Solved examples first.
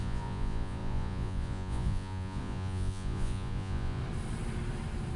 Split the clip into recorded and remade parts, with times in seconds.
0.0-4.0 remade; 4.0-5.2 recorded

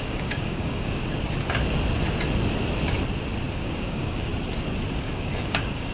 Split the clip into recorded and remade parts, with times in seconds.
0.0-1.0 remade; 1.0-3.5 recorded; 3.5-4.3 remade; 4.3-5.0 recorded; 5.0-5.9 remade